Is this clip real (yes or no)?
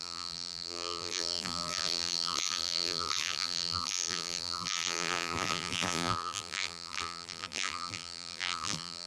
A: no